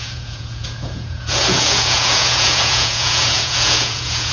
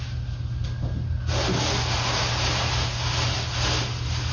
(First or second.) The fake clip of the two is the first